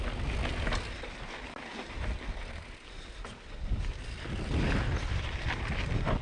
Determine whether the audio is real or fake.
real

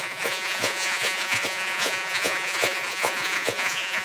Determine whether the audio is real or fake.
fake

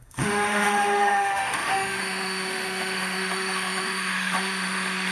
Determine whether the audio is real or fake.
fake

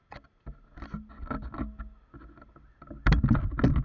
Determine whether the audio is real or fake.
real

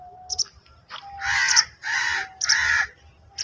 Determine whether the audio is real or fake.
real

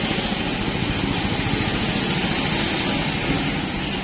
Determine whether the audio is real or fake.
real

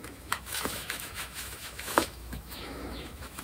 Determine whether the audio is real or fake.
fake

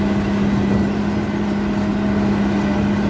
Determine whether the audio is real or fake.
real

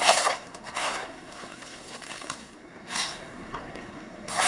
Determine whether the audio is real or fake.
fake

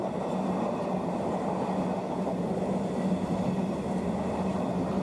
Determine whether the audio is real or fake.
real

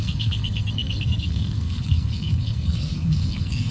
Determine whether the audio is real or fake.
fake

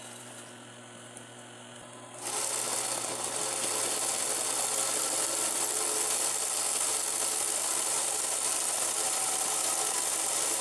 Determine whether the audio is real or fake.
real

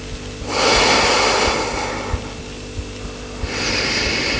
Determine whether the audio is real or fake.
real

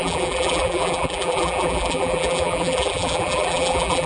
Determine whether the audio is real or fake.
fake